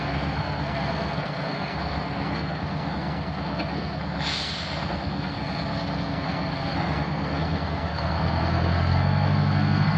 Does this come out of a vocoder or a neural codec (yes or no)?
yes